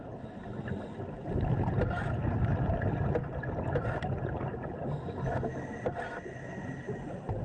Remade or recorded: recorded